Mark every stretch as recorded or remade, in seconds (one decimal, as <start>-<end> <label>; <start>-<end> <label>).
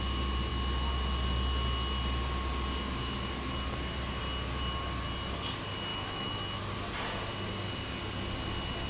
0.0-5.9 recorded; 5.9-6.6 remade; 6.6-8.9 recorded